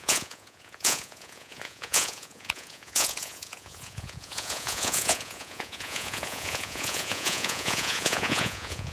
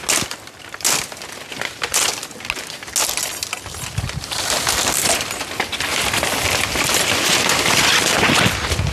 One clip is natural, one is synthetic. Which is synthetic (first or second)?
first